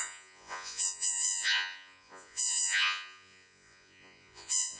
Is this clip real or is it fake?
fake